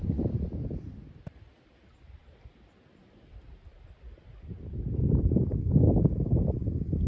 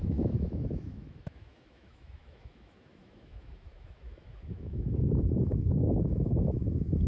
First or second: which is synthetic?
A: second